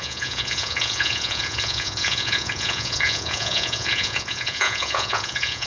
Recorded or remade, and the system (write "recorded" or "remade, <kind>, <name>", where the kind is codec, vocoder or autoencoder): remade, vocoder, Vocos